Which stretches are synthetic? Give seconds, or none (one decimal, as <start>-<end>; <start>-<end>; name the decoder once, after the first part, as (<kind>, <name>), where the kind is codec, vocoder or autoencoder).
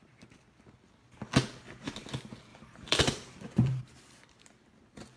2.5-4.2 (vocoder, BigVGAN v2)